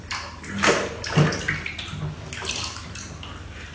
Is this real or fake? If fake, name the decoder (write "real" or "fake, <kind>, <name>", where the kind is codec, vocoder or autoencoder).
real